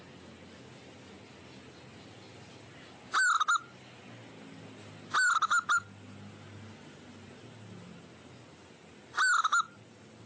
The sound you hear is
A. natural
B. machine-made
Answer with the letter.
A